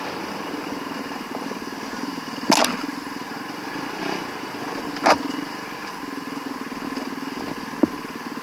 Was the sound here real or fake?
real